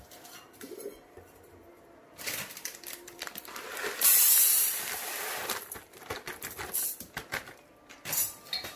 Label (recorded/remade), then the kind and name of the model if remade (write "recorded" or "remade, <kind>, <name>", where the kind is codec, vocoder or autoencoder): remade, vocoder, BigVGAN v2